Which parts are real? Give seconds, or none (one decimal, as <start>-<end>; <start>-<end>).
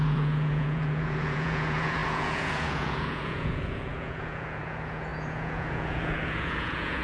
none